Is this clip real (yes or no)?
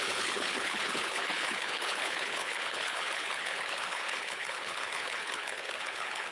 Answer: no